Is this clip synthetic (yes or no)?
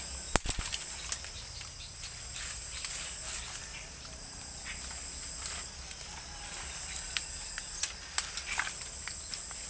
no